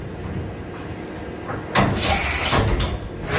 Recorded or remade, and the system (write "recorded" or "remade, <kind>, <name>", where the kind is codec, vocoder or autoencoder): recorded